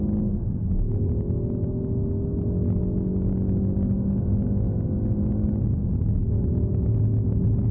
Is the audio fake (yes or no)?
no